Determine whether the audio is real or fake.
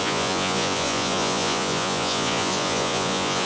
fake